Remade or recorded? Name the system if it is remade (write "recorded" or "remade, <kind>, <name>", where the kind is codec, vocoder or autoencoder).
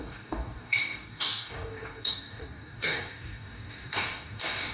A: remade, codec, DAC